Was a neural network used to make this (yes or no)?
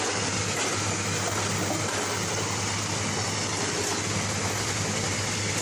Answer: no